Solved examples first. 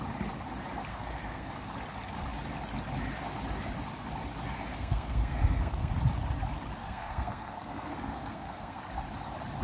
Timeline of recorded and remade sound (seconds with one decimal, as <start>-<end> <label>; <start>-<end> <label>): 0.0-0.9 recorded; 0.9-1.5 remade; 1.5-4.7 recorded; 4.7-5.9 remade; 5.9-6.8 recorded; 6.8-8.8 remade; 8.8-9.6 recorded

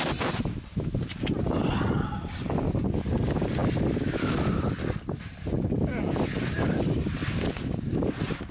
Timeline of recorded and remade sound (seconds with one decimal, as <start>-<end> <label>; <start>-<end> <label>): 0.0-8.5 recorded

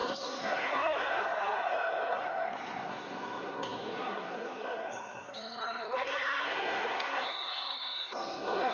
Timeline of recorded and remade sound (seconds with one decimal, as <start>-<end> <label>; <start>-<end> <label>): 0.0-8.7 remade